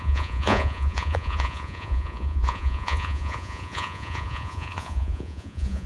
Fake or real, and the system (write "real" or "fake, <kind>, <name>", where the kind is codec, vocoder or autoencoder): fake, vocoder, Vocos